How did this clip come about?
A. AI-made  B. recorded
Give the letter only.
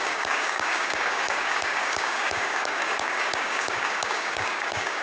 A